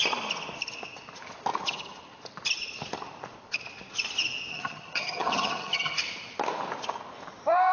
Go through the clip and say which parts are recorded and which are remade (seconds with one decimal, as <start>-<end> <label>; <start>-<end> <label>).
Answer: 0.0-4.5 recorded; 4.5-6.0 remade; 6.0-7.7 recorded